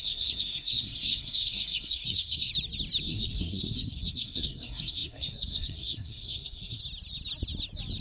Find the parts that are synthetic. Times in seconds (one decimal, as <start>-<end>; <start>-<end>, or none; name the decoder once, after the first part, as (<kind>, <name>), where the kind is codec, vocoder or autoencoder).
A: 0.0-2.5 (codec, SNAC); 3.0-6.8